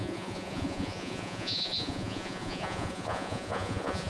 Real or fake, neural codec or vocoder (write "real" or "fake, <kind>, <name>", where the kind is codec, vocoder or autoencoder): fake, vocoder, Vocos